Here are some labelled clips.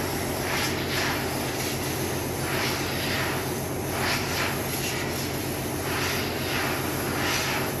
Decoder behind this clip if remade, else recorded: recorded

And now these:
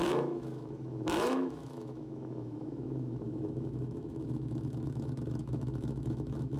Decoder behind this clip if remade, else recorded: remade, autoencoder, DAC-VAE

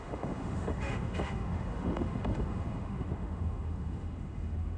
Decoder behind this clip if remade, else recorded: remade, autoencoder, DAC-VAE